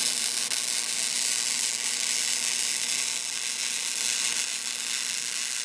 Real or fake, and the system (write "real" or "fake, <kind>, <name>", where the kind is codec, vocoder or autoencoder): real